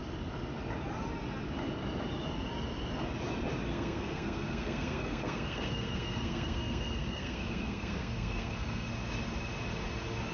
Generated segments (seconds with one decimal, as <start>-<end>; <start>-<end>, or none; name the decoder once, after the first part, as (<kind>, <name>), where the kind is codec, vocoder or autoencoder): 3.7-8.9 (codec, SNAC)